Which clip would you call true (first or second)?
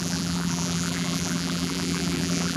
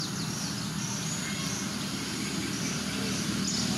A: second